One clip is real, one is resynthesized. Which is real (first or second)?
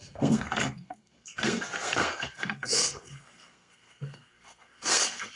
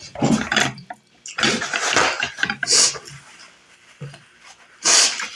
second